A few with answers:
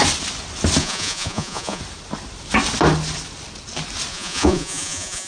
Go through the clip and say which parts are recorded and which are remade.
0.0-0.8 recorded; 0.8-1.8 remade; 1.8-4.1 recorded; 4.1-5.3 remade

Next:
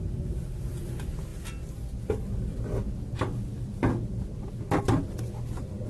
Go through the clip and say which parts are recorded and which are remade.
0.0-5.9 recorded

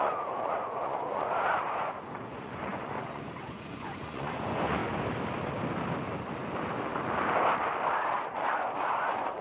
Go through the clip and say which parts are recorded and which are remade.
0.0-4.8 remade; 4.8-8.1 recorded; 8.1-9.4 remade